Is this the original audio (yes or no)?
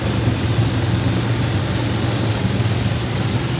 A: yes